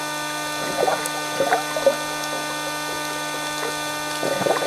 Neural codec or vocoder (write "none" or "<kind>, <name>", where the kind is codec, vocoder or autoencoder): none